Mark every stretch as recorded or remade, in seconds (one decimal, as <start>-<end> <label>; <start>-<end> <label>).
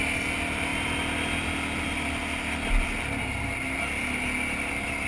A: 0.0-5.1 recorded